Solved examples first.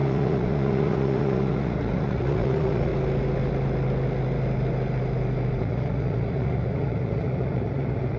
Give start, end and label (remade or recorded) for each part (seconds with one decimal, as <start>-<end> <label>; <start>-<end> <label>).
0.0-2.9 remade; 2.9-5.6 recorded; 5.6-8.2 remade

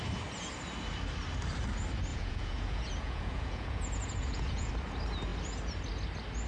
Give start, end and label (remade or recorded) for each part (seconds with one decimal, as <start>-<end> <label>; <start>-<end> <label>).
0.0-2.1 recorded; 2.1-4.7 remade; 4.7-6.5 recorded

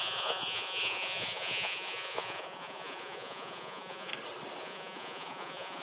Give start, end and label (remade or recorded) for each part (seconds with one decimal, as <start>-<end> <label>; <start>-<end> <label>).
0.0-4.1 remade; 4.1-4.6 recorded; 4.6-5.8 remade